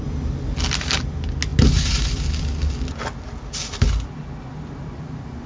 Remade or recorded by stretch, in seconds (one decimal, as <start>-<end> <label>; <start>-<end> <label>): 0.0-5.5 recorded